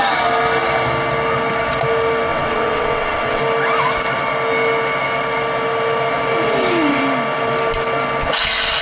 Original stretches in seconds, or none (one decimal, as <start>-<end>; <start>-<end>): 0.0-2.3; 3.4-8.8